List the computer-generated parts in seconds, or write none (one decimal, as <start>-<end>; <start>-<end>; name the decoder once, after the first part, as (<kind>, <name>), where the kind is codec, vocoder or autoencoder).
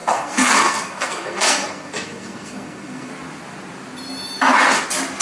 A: 0.0-3.1 (codec, SNAC)